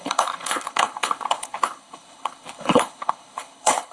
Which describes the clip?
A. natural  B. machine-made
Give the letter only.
B